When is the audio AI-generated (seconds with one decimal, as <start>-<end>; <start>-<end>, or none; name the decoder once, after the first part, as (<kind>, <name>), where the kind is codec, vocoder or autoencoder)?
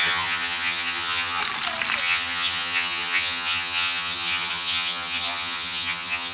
0.0-1.4 (vocoder, HiFi-GAN); 2.0-6.3